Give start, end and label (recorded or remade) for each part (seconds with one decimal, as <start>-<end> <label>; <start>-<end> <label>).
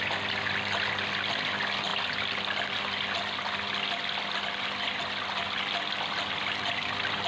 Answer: 0.0-7.3 recorded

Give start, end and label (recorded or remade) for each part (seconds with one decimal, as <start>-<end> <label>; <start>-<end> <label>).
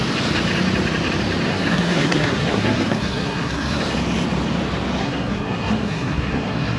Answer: 0.0-1.5 recorded; 1.5-3.8 remade; 3.8-5.0 recorded; 5.0-6.8 remade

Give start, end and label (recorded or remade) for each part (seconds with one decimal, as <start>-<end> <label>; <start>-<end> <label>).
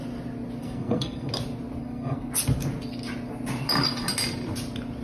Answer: 0.0-0.6 recorded; 0.6-1.3 remade; 1.3-1.8 recorded; 1.8-2.3 remade; 2.3-5.0 recorded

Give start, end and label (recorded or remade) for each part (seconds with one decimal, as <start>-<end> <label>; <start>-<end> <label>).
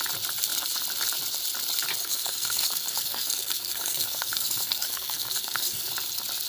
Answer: 0.0-2.0 recorded; 2.0-5.9 remade; 5.9-6.5 recorded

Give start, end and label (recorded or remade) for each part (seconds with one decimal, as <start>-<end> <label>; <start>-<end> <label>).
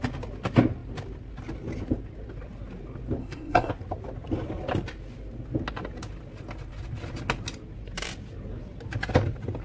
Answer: 0.0-3.2 recorded; 3.2-3.7 remade; 3.7-9.6 recorded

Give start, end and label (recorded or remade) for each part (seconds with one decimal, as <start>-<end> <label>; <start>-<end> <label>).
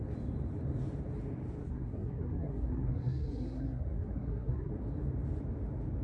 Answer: 0.0-1.6 recorded; 1.6-4.7 remade; 4.7-6.0 recorded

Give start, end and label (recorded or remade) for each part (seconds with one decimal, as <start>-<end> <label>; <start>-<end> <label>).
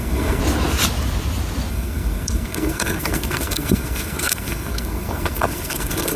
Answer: 0.0-0.4 remade; 0.4-1.7 recorded; 1.7-6.2 remade